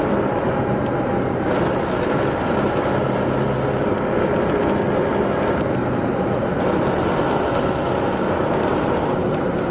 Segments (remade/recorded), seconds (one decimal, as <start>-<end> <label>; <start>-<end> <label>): 0.0-8.7 recorded; 8.7-9.7 remade